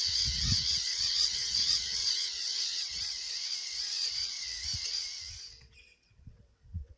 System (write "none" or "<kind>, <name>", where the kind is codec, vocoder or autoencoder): vocoder, WaveNeXt